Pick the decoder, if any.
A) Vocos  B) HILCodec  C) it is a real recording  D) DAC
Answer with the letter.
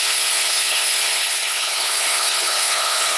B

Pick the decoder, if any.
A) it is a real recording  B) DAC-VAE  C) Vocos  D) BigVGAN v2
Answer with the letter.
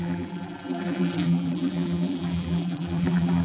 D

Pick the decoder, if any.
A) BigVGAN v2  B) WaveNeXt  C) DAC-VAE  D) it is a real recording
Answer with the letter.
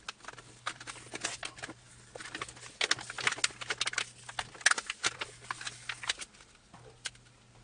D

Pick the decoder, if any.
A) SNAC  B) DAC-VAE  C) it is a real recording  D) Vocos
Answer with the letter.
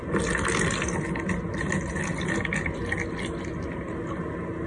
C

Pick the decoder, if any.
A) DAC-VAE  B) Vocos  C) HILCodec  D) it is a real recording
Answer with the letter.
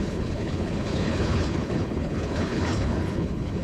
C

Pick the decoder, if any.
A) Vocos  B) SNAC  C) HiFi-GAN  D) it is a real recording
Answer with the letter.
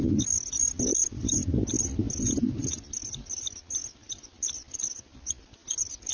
D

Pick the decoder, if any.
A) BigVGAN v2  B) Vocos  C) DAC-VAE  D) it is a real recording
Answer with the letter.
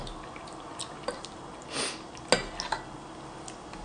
D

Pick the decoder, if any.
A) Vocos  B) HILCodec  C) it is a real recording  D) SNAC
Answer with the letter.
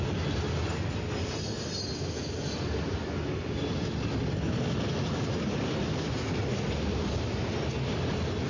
C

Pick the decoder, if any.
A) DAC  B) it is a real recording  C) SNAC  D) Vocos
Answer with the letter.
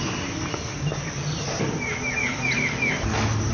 B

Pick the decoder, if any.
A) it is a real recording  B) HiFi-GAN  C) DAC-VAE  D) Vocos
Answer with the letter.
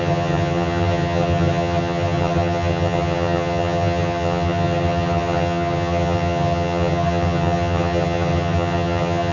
B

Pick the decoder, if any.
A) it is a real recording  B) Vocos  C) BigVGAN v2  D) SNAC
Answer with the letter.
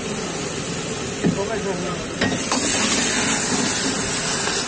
A